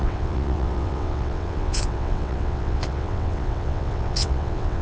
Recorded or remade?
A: remade